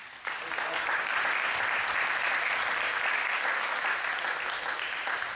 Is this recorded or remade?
recorded